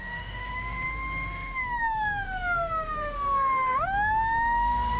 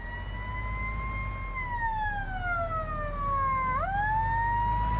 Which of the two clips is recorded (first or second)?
second